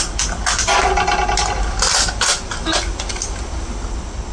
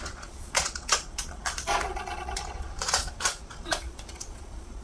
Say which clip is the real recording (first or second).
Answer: first